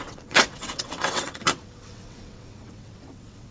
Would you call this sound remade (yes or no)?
yes